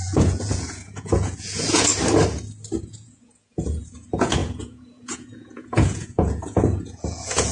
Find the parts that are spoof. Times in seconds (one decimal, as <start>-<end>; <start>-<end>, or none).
0.0-1.9; 2.9-7.5